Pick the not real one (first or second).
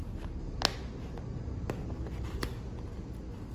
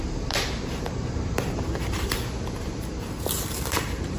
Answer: second